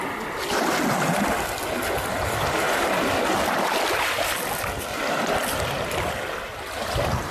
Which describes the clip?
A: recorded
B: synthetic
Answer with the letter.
A